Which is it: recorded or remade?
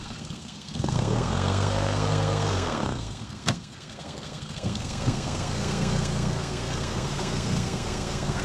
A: remade